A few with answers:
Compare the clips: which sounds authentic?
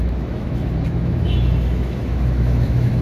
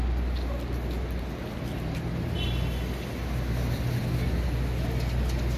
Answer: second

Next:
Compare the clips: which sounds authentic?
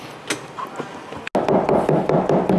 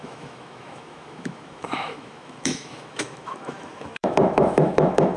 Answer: first